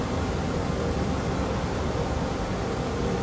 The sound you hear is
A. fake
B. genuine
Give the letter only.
B